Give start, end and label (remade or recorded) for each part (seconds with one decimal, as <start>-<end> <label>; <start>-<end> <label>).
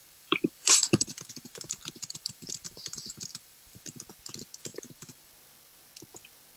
0.0-4.0 remade; 4.0-4.7 recorded; 4.7-5.3 remade; 5.3-6.6 recorded